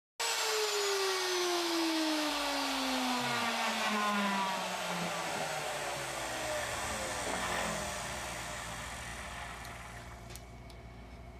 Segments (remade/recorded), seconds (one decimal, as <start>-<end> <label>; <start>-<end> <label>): 0.0-1.4 recorded; 1.4-2.3 remade; 2.3-11.4 recorded